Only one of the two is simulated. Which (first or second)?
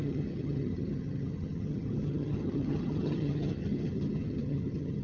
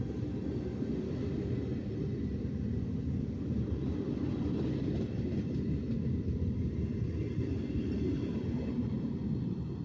first